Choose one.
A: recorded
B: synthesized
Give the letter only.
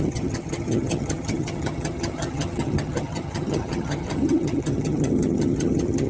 B